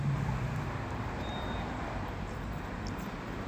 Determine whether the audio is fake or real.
fake